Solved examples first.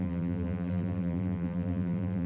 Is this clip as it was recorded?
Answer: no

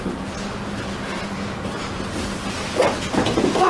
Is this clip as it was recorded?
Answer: yes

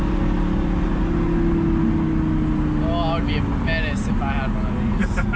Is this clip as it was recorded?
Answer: yes